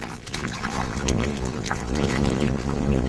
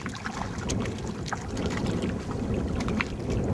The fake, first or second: first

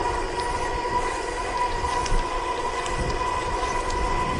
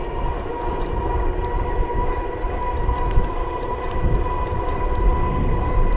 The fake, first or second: first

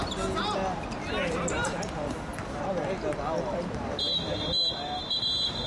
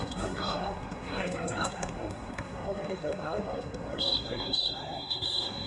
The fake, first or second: second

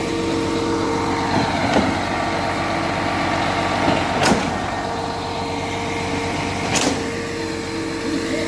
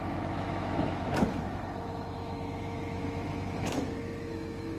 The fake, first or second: second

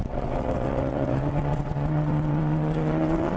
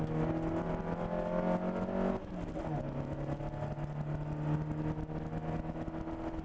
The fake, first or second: first